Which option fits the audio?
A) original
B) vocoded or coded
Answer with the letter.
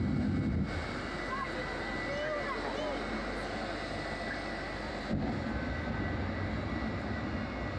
A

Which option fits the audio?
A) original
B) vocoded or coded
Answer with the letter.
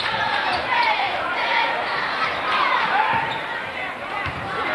B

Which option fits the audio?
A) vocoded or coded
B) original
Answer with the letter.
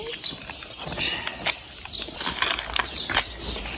B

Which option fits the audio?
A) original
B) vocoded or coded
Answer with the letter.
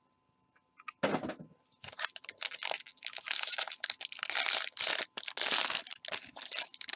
A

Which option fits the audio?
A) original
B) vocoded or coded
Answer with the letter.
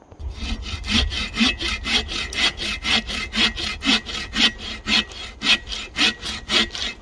A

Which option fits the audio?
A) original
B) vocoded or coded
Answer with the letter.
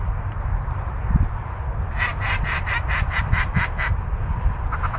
B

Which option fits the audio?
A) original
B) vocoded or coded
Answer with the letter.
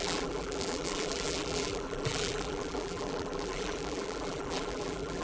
B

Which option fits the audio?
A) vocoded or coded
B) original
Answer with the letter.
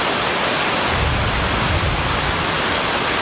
A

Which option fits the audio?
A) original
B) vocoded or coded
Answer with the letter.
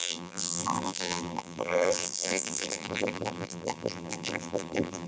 B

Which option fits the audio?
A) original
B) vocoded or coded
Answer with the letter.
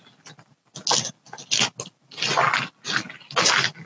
A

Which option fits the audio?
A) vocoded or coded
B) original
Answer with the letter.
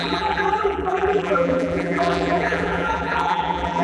A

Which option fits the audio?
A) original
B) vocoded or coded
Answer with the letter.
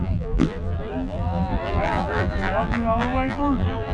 B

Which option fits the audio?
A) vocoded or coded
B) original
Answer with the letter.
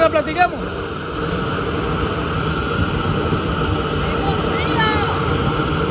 B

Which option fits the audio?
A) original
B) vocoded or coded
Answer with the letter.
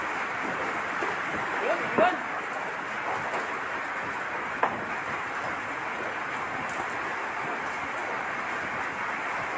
A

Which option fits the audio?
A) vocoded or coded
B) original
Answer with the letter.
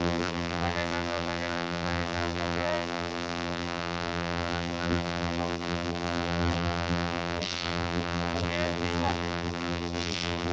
A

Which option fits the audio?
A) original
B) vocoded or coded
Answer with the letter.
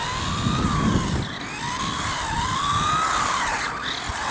A